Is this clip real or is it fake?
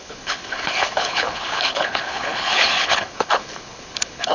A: fake